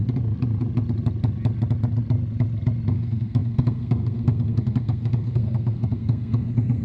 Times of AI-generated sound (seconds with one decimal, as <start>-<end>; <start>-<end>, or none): 2.9-6.8